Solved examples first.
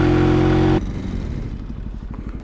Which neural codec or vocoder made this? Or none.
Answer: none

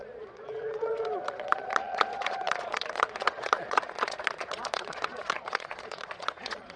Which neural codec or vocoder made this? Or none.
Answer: vocoder, Vocos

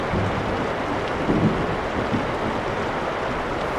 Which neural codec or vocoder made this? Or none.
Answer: none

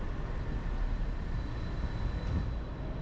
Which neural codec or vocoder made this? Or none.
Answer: none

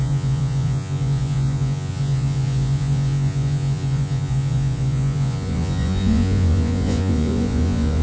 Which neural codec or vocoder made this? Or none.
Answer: vocoder, Vocos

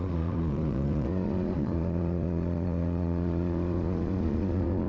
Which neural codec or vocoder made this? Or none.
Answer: vocoder, Vocos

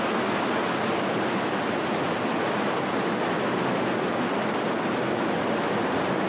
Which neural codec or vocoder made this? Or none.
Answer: none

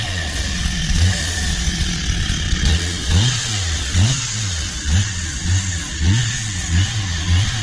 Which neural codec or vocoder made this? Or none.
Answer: vocoder, Vocos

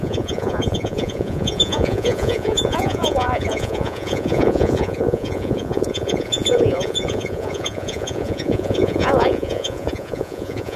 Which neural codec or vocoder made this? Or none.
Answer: vocoder, Vocos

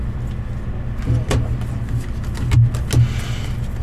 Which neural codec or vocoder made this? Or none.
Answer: none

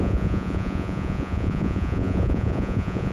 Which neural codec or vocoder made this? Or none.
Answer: vocoder, Vocos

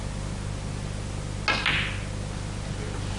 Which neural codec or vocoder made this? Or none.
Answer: none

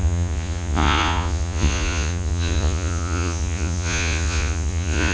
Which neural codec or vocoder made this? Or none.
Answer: vocoder, Vocos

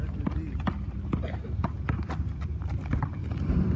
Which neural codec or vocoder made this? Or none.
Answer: none